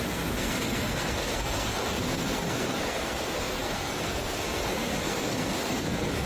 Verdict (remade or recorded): remade